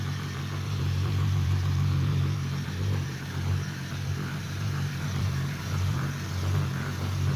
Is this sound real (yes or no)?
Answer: no